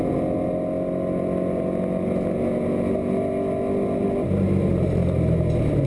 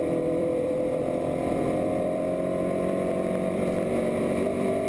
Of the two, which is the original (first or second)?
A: first